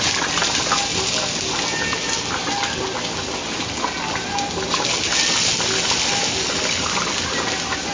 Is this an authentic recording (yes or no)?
yes